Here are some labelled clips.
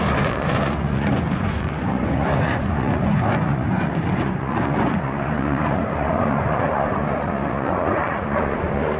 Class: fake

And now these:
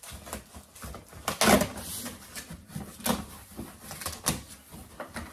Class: real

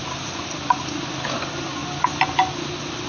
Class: real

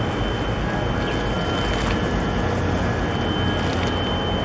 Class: real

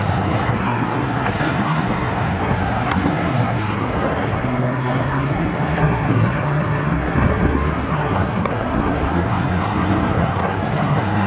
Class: fake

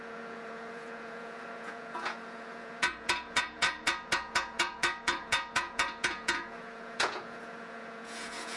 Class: fake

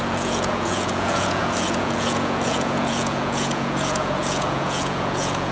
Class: fake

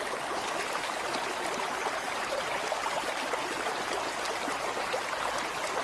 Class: real